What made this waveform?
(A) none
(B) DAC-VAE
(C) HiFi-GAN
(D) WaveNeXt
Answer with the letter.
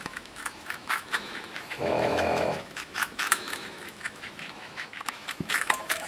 B